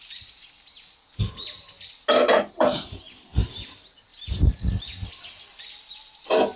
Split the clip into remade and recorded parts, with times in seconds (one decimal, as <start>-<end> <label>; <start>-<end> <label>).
0.0-6.6 recorded